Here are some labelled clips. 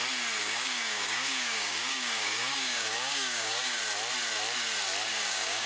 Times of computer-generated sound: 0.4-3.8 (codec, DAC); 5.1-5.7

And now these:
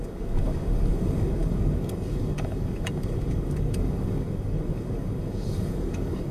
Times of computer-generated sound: 0.0-6.3 (codec, DAC)

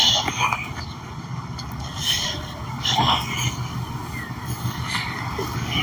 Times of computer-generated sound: 0.0-5.8 (codec, DAC)